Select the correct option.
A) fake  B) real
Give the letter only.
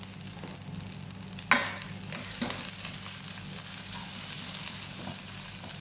B